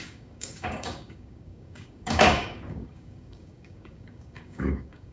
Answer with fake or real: fake